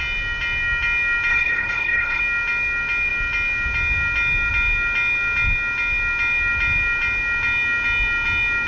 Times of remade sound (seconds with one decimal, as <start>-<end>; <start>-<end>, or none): 1.3-2.2